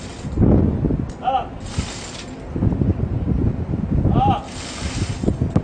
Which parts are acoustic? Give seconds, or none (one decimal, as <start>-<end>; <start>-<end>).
0.0-2.9; 3.4-5.6